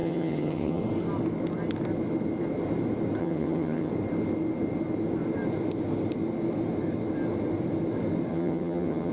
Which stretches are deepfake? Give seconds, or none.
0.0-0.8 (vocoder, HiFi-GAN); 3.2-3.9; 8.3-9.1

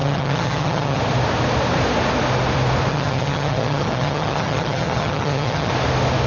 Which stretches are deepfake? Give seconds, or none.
0.0-1.0 (vocoder, HiFi-GAN); 2.9-5.7

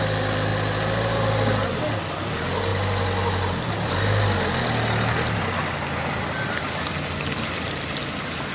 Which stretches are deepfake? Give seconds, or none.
none

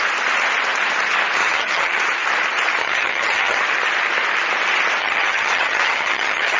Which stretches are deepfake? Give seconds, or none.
1.4-2.0 (vocoder, HiFi-GAN); 2.8-3.6; 5.0-6.6

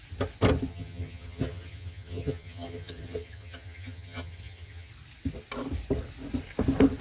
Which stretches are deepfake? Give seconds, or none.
0.7-4.9 (vocoder, HiFi-GAN)